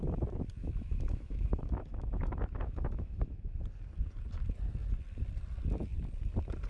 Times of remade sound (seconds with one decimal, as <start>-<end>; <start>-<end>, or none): 0.6-3.6